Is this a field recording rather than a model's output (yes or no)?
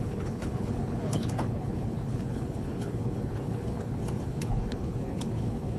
no